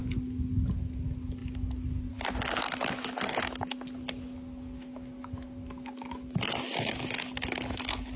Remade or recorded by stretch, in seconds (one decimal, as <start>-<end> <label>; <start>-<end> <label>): 0.0-8.2 recorded